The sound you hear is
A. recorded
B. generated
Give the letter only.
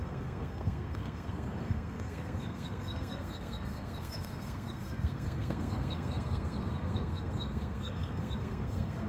B